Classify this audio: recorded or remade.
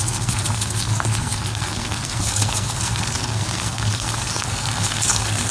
remade